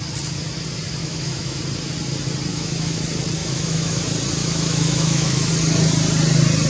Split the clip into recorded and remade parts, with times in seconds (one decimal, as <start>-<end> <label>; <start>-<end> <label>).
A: 0.0-1.0 recorded; 1.0-1.6 remade; 1.6-2.5 recorded; 2.5-3.0 remade; 3.0-3.4 recorded; 3.4-4.0 remade; 4.0-4.4 recorded; 4.4-5.5 remade; 5.5-6.7 recorded

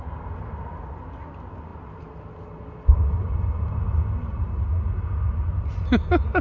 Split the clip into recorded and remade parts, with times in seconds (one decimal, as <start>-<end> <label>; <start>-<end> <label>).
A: 0.0-6.4 recorded

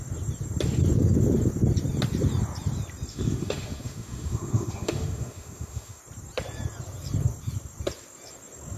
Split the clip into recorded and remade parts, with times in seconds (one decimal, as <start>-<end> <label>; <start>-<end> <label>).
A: 0.0-3.1 recorded; 3.1-6.0 remade; 6.0-8.8 recorded

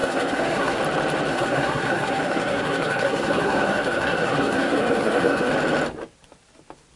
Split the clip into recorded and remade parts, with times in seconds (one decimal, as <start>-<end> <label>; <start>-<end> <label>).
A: 0.0-0.8 remade; 0.8-1.3 recorded; 1.3-5.5 remade; 5.5-7.0 recorded

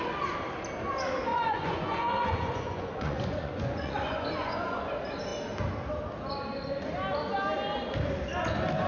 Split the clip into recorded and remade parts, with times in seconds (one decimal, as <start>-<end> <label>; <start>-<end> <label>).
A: 0.0-1.3 recorded; 1.3-4.8 remade; 4.8-8.9 recorded